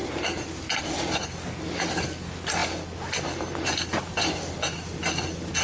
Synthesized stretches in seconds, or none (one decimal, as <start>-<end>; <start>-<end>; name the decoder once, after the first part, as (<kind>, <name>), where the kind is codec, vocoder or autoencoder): 0.0-0.8 (vocoder, BigVGAN v2); 2.6-4.9